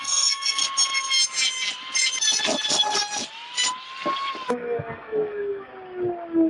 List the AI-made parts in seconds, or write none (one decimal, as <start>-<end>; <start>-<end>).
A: 0.0-0.6; 4.5-5.7